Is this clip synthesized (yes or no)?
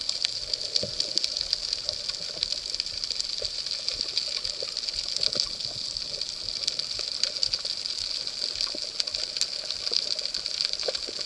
no